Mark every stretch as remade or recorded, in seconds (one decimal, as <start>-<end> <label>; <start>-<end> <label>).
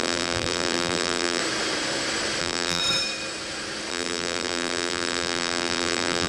0.0-1.4 remade; 1.4-2.4 recorded; 2.4-2.8 remade; 2.8-3.9 recorded; 3.9-6.3 remade